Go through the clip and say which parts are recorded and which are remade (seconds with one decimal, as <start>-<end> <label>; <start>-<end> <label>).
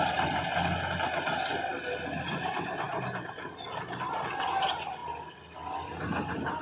0.0-6.6 recorded